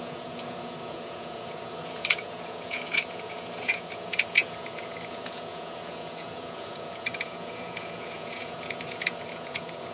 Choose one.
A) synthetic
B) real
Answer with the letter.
A